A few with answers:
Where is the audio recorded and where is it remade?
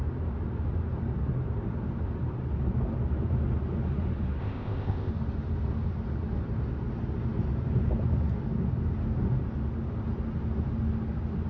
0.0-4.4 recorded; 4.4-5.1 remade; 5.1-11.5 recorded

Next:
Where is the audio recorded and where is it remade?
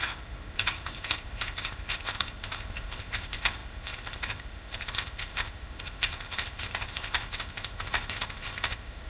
0.0-9.1 remade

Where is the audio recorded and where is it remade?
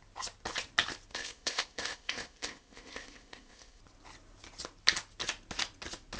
0.0-1.1 recorded; 1.1-3.8 remade; 3.8-6.2 recorded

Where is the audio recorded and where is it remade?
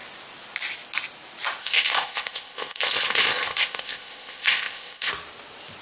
0.0-1.6 recorded; 1.6-5.1 remade; 5.1-5.8 recorded